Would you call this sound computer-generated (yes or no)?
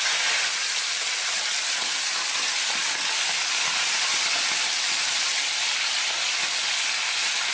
no